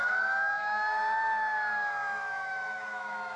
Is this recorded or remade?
remade